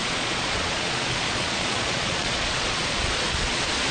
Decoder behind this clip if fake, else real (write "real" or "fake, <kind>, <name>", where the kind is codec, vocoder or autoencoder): fake, vocoder, Vocos